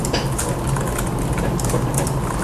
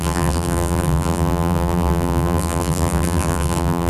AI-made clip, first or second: second